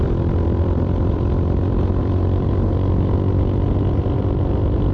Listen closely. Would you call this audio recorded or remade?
remade